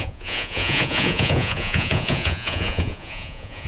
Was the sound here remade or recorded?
remade